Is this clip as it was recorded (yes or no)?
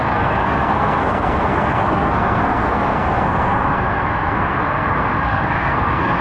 no